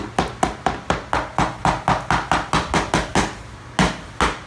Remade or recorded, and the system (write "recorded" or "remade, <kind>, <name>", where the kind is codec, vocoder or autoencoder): recorded